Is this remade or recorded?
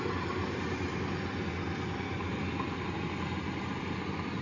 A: recorded